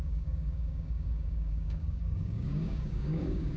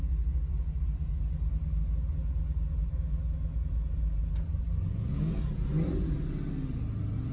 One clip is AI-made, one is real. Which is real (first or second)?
second